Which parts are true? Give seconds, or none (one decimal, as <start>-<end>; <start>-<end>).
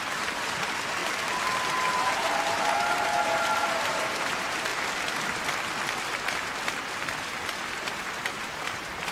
1.0-1.6; 4.7-7.9